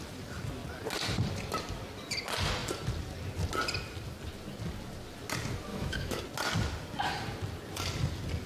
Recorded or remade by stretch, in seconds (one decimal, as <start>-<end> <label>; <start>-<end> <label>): 0.0-5.7 recorded; 5.7-6.2 remade; 6.2-8.5 recorded